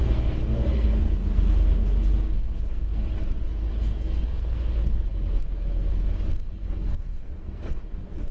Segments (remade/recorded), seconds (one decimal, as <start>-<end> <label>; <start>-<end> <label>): 0.0-3.0 remade; 3.0-3.6 recorded; 3.6-8.3 remade